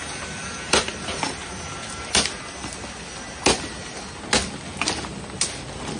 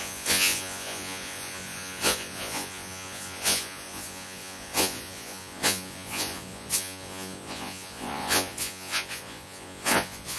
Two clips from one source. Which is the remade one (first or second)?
second